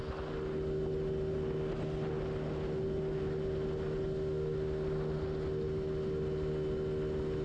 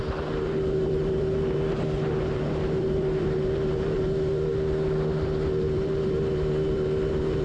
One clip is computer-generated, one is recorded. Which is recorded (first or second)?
first